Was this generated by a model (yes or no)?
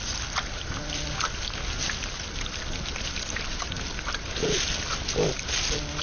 no